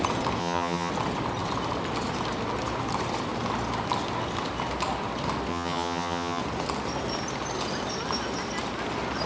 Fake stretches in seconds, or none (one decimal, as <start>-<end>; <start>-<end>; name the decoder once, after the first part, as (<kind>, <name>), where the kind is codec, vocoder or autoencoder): 0.4-0.9 (vocoder, HiFi-GAN); 5.5-6.4